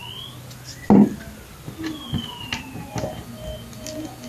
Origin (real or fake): real